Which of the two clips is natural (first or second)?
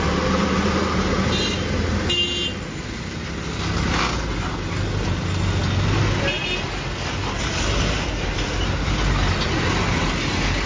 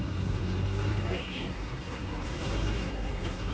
first